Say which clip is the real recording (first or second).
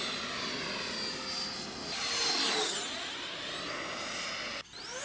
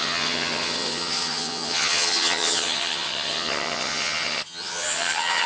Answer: first